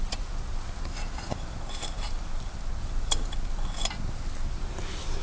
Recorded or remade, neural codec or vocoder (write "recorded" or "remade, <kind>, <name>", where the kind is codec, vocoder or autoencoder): recorded